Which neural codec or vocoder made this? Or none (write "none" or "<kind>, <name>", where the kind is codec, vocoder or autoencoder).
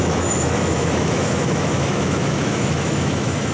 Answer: autoencoder, DAC-VAE